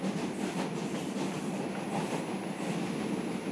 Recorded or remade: recorded